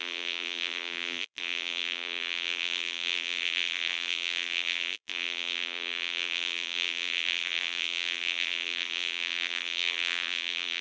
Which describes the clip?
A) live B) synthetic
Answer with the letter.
B